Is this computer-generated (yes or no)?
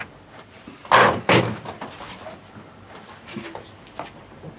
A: no